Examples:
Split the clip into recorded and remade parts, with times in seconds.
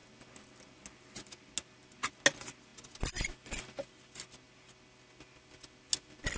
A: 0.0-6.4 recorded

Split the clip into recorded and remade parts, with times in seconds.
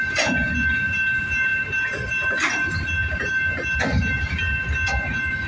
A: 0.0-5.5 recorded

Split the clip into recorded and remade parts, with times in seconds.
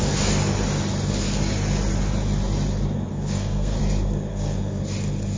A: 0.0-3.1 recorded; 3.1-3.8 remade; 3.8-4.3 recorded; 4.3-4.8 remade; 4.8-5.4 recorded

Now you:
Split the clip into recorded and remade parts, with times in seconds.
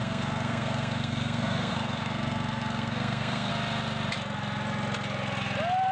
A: 0.0-3.5 remade; 3.5-5.9 recorded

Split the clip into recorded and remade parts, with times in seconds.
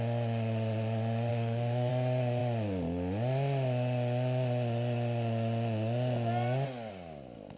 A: 0.0-1.3 recorded; 1.3-1.9 remade; 1.9-7.6 recorded